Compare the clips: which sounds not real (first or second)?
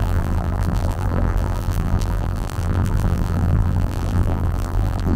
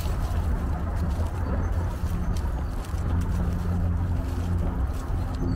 first